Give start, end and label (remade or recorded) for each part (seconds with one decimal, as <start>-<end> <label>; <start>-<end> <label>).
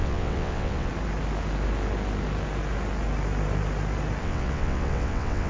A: 0.0-0.9 remade; 0.9-4.2 recorded; 4.2-5.5 remade